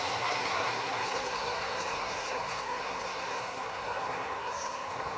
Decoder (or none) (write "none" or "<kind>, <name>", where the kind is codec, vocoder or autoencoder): codec, SNAC